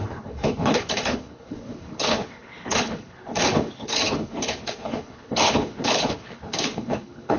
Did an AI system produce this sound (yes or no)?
yes